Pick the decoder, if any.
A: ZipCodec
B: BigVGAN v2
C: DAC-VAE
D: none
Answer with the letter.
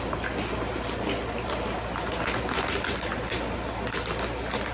D